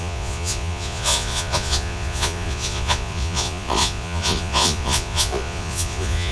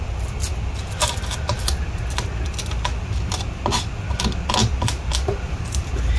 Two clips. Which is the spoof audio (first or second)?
first